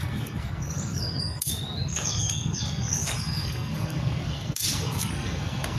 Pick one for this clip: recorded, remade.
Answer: remade